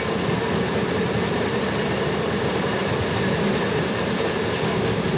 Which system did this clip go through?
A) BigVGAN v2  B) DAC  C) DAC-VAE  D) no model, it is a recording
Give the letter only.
D